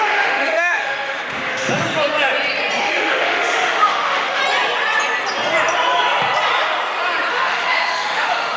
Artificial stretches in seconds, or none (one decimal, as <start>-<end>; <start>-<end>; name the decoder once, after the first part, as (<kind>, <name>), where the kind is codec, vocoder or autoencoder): 0.0-1.7 (autoencoder, DAC-VAE); 2.8-4.4; 7.3-8.6